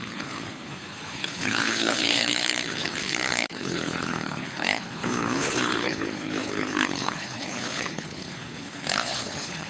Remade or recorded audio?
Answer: remade